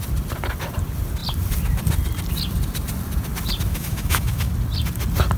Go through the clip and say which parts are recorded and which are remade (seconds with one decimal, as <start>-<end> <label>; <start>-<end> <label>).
0.0-3.7 recorded; 3.7-4.5 remade; 4.5-5.4 recorded